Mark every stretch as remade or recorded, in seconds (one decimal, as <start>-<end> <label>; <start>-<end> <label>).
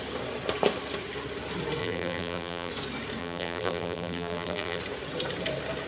0.0-1.8 recorded; 1.8-2.7 remade; 2.7-3.2 recorded; 3.2-4.8 remade; 4.8-5.9 recorded